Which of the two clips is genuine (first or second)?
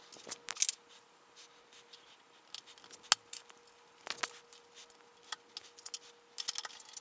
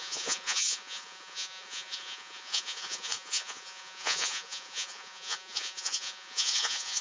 first